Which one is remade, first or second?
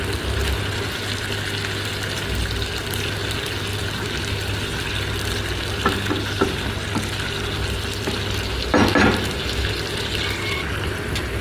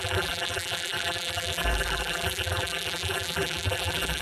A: second